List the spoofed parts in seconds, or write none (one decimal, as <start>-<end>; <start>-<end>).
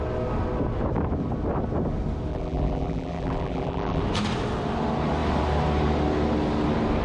2.3-4.0